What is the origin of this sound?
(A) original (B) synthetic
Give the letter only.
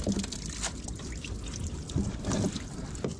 A